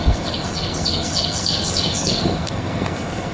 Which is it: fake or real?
fake